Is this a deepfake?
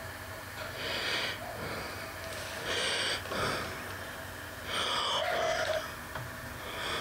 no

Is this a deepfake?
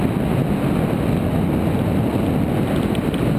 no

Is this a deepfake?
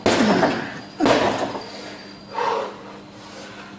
no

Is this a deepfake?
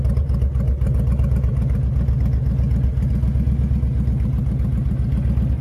no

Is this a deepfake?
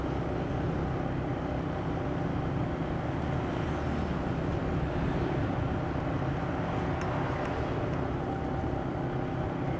no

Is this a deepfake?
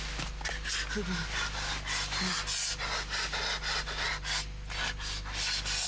no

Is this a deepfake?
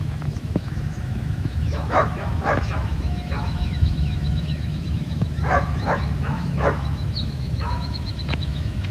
yes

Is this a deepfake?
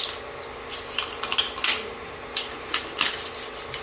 no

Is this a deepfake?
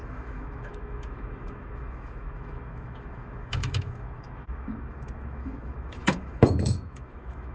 yes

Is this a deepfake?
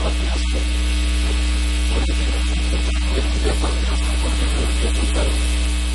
no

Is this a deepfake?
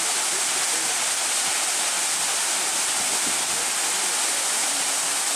no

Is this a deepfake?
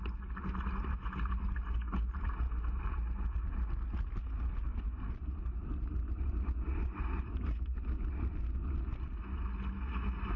no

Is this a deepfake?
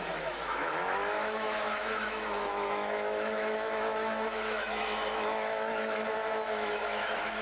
yes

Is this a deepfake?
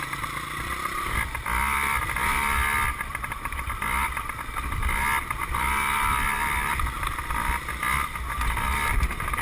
no